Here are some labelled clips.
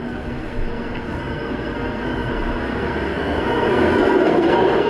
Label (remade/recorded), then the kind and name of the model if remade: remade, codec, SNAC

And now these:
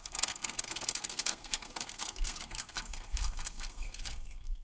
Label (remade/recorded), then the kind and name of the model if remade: remade, codec, SNAC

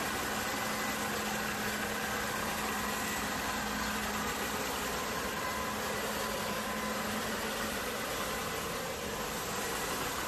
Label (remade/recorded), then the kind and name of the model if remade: recorded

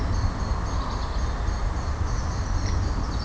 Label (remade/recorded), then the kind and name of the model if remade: recorded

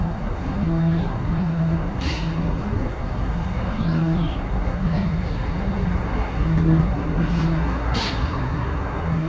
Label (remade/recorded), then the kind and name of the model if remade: remade, codec, SNAC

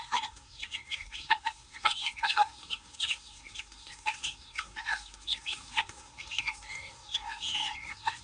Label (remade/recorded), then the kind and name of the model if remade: remade, codec, SNAC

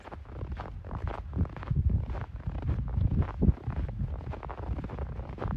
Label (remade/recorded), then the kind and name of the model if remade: recorded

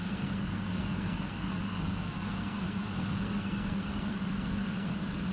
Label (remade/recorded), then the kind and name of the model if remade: remade, codec, SNAC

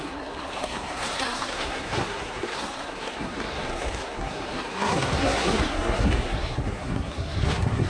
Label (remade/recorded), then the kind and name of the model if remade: remade, codec, SNAC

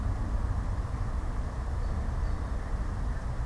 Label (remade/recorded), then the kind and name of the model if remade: recorded